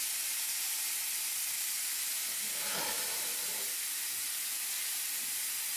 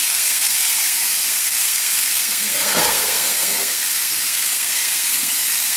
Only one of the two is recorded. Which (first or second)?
first